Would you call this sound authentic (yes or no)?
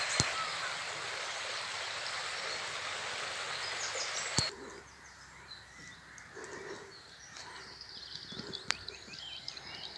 yes